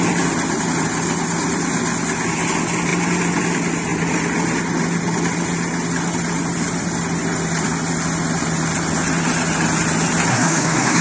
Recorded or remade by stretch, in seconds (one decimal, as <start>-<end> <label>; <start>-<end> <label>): 0.0-10.3 recorded; 10.3-11.0 remade